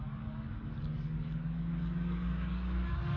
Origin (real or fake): fake